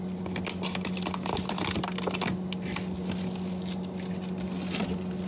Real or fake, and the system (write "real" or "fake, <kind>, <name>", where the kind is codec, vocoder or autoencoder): real